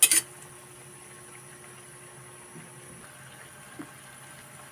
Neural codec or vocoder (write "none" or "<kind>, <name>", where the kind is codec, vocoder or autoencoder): none